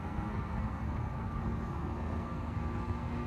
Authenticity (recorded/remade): remade